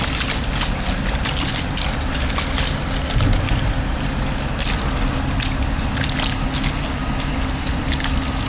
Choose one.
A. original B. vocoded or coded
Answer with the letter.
A